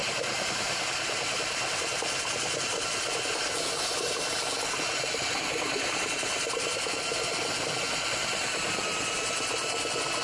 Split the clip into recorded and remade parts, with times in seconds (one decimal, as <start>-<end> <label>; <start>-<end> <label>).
0.0-10.2 recorded